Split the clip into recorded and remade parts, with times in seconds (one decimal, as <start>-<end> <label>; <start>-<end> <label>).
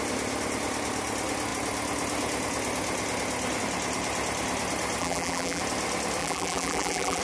0.0-5.0 recorded; 5.0-5.6 remade; 5.6-6.2 recorded; 6.2-7.2 remade